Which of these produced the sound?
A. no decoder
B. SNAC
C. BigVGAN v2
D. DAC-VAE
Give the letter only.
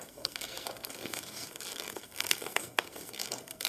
B